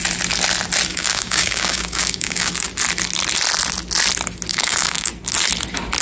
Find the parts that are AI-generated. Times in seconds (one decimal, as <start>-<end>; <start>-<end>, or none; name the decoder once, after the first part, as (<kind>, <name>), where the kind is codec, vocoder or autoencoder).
0.9-2.5 (codec, DAC); 4.5-5.1